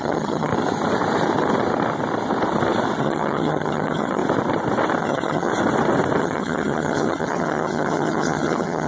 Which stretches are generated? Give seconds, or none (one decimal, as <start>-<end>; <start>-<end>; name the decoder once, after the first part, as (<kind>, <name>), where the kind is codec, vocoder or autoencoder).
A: 0.0-0.5 (vocoder, HiFi-GAN); 3.0-4.2; 5.0-5.5; 6.2-8.9